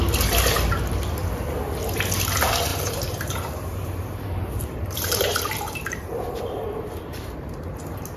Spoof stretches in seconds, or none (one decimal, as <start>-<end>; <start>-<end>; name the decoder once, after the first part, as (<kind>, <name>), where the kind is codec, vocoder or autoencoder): 2.7-6.4 (vocoder, BigVGAN v2)